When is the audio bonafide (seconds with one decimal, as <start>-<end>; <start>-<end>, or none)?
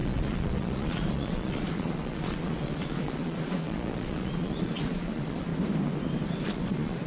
5.5-6.4